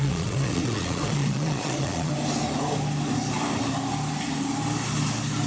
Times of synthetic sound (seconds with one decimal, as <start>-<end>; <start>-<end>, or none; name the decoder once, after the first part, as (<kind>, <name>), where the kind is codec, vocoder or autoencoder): 0.0-2.1 (vocoder, Vocos)